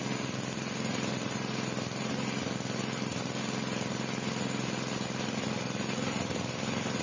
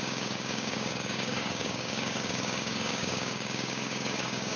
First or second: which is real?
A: first